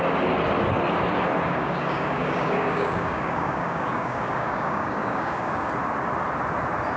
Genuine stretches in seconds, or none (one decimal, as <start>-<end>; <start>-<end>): 0.0-1.5; 5.7-7.0